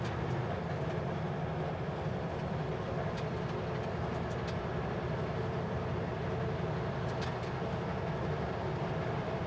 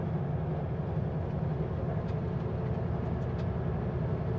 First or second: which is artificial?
first